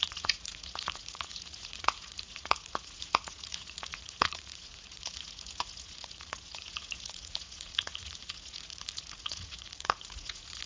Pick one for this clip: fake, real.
fake